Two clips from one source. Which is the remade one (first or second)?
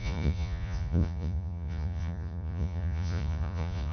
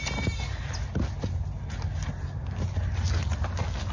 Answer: first